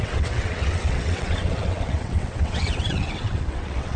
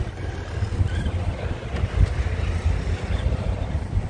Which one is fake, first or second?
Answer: first